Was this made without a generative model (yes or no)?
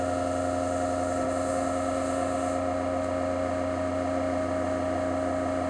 no